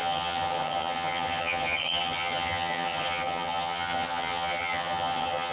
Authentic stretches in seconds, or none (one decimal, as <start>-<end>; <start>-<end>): none